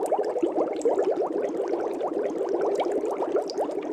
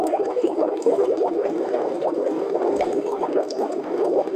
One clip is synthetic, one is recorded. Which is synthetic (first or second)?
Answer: second